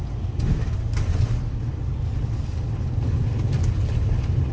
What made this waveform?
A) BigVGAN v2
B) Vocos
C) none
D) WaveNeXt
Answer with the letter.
C